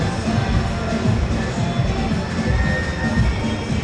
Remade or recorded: recorded